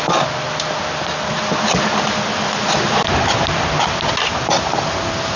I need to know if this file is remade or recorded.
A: recorded